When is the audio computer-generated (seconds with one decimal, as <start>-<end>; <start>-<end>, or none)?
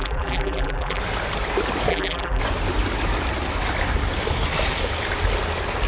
0.0-1.0; 1.9-2.4